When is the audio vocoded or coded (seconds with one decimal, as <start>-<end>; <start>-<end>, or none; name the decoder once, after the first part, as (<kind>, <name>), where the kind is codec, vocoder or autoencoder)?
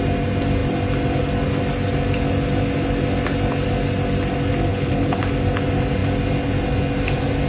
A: 4.7-5.2 (codec, HILCodec)